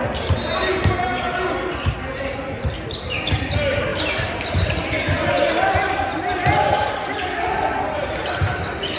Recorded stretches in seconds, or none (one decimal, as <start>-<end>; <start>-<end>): 0.0-9.0